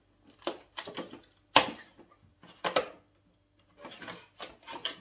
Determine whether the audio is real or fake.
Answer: real